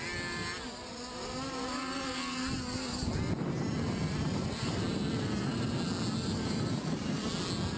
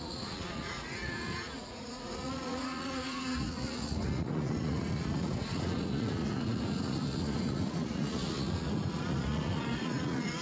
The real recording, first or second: first